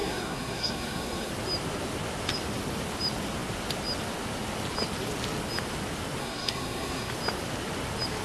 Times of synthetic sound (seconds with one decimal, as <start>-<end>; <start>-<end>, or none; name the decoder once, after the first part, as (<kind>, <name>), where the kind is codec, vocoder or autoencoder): 0.0-1.3 (codec, SNAC); 6.2-7.1